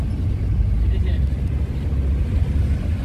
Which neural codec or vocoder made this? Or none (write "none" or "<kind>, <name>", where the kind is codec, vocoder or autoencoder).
none